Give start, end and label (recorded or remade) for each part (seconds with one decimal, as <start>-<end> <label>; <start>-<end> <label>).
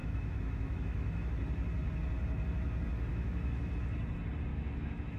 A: 0.0-1.3 remade; 1.3-3.1 recorded; 3.1-3.7 remade; 3.7-4.5 recorded; 4.5-5.2 remade